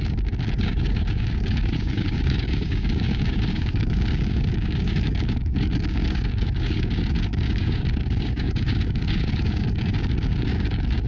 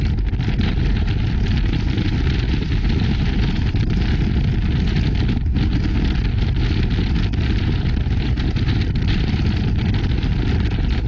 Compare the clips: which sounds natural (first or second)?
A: second